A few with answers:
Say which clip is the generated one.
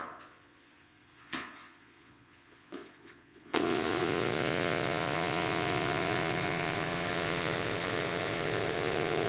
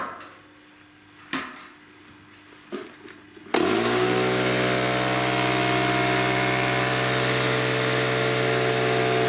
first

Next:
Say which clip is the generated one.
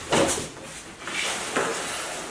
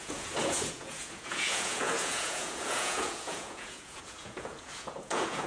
second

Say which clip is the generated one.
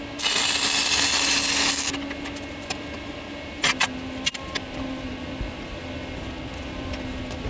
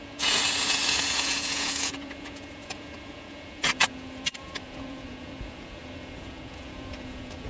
second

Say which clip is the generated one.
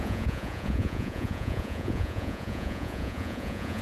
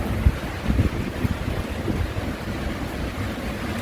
first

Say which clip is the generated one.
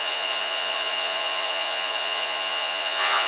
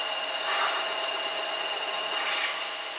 first